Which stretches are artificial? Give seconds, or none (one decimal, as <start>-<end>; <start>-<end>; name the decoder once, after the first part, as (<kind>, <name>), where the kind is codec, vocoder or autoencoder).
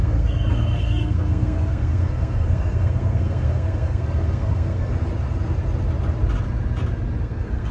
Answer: 0.0-4.9 (codec, SNAC); 7.2-7.7